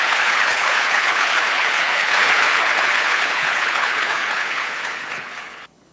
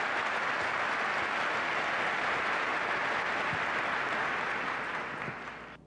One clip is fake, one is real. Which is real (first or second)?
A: second